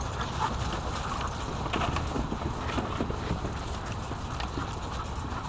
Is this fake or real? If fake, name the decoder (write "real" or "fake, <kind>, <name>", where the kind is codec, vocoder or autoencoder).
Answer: real